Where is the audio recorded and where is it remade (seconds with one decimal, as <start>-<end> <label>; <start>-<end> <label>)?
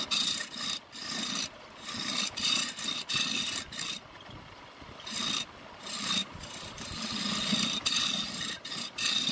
0.0-9.3 recorded